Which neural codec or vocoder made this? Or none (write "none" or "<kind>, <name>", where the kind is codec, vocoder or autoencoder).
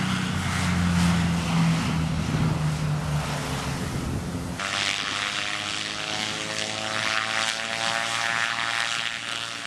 none